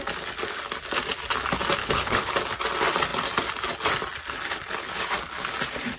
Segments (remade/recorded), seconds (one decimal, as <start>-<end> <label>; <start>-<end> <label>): 0.0-1.8 recorded; 1.8-2.3 remade; 2.3-6.0 recorded